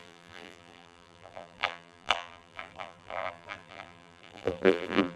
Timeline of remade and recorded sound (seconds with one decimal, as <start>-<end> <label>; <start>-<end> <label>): 0.0-5.2 remade